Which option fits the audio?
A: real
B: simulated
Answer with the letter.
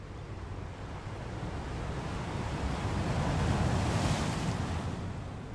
A